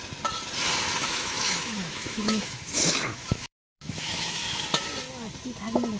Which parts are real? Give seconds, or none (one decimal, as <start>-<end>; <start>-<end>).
0.0-1.0; 4.6-6.0